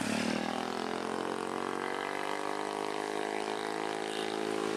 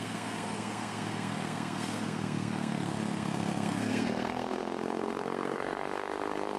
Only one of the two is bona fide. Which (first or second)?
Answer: first